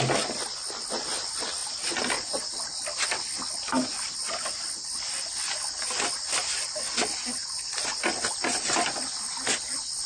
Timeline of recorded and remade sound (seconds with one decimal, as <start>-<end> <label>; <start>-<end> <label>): 0.0-10.1 recorded